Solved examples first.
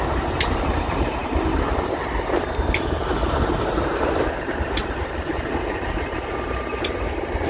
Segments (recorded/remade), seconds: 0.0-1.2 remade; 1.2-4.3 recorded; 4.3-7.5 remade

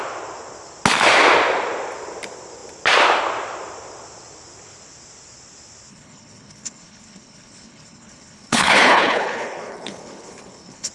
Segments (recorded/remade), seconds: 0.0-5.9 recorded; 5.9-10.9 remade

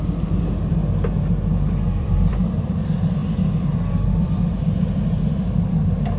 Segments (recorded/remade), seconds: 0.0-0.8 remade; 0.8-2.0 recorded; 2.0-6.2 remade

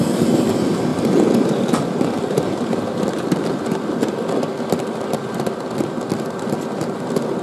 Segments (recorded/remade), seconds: 0.0-0.9 recorded; 0.9-5.3 remade; 5.3-7.4 recorded

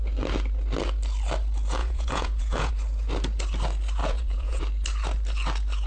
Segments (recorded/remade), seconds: 0.0-1.8 recorded; 1.8-2.7 remade; 2.7-4.0 recorded; 4.0-4.6 remade; 4.6-5.9 recorded

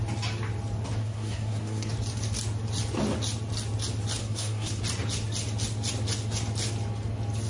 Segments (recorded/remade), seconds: 0.0-1.0 recorded; 1.0-1.9 remade; 1.9-4.2 recorded; 4.2-4.8 remade; 4.8-7.5 recorded

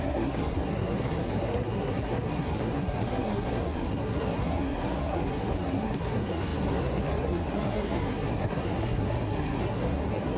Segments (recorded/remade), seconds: 0.0-10.4 remade

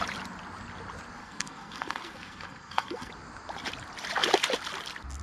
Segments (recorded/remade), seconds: 0.0-1.2 recorded; 1.2-3.1 remade; 3.1-5.2 recorded